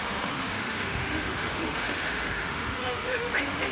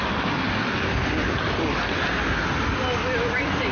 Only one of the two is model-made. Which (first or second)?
first